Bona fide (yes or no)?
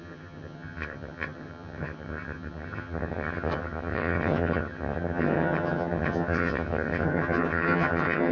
no